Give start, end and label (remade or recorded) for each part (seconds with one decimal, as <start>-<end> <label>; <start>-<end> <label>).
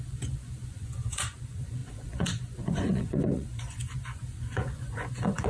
0.0-5.5 remade